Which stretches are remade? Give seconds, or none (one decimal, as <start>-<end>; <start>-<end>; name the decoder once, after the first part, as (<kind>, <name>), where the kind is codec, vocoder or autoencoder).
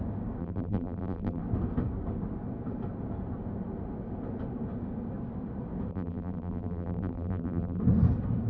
0.4-1.4 (vocoder, BigVGAN v2); 5.9-7.8